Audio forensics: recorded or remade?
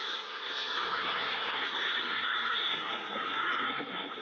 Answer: remade